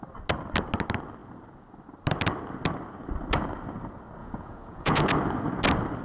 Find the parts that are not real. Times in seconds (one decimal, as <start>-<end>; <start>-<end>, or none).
4.2-5.1